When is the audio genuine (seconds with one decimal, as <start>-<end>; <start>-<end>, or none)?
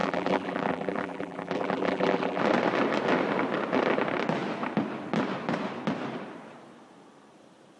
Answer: 2.4-7.8